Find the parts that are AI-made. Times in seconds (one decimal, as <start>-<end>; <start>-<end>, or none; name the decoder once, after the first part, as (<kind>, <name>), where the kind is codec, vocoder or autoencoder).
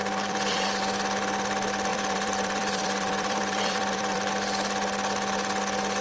0.0-0.8 (vocoder, BigVGAN v2); 1.9-4.3